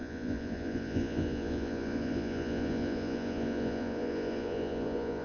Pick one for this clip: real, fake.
fake